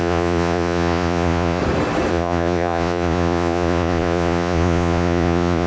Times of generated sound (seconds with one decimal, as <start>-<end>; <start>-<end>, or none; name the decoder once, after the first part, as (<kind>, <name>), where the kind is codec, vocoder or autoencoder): 0.0-1.6 (vocoder, Vocos); 2.1-5.7